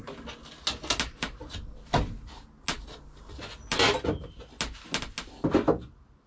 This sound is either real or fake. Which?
real